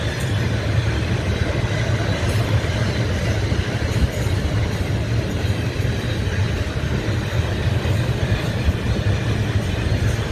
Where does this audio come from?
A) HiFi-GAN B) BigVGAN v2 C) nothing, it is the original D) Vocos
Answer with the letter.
C